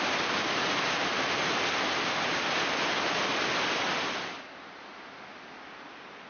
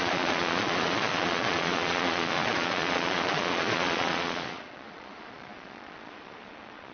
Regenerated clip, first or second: second